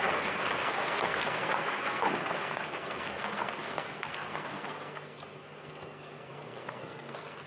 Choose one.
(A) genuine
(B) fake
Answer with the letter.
B